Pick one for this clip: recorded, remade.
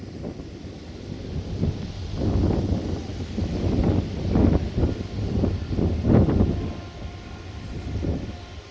recorded